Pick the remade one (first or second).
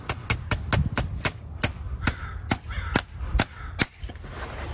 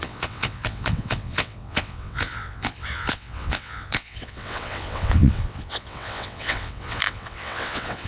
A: second